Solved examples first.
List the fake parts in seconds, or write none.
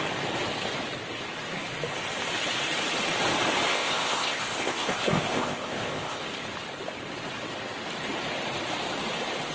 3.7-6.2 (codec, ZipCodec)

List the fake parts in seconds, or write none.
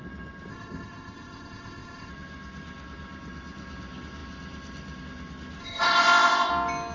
0.5-2.1 (codec, ZipCodec); 5.6-6.5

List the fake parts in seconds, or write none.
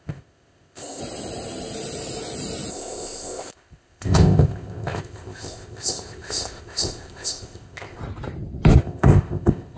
0.0-1.0 (codec, ZipCodec); 2.7-8.0; 8.8-9.8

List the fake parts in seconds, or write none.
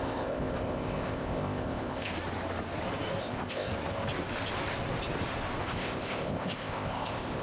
0.0-2.1 (codec, ZipCodec); 3.2-3.7; 5.6-7.4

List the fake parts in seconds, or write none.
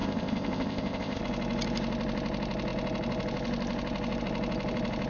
0.0-1.2 (codec, ZipCodec)